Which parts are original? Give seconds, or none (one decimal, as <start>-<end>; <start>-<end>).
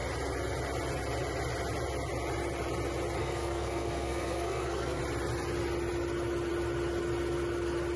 0.0-3.2; 5.0-8.0